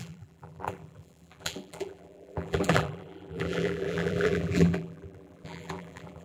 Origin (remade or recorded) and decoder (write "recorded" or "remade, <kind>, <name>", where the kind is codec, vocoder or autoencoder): remade, vocoder, BigVGAN v2